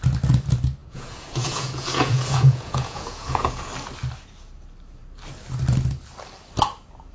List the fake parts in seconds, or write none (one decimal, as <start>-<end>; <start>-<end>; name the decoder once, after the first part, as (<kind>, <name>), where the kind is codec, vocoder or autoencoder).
0.8-3.7 (vocoder, Vocos)